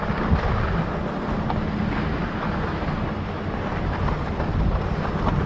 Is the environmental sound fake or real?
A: real